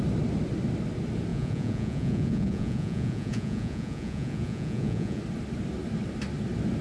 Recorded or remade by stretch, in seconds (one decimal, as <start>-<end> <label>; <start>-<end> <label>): 0.0-1.3 recorded; 1.3-5.2 remade; 5.2-6.8 recorded